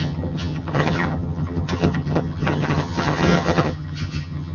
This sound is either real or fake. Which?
fake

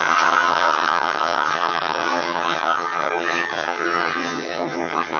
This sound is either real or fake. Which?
fake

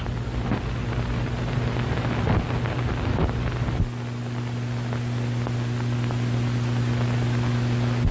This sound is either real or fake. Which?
real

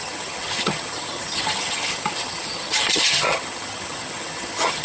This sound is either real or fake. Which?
fake